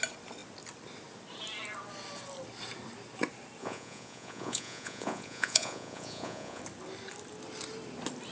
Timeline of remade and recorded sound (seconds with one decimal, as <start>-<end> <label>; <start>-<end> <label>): 0.0-3.6 recorded; 3.6-6.6 remade; 6.6-8.3 recorded